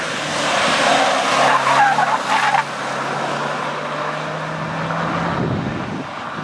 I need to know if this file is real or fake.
real